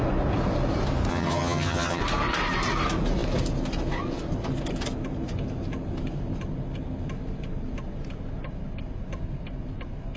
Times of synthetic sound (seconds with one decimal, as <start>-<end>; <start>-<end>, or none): 1.1-2.0